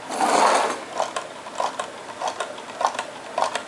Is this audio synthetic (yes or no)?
no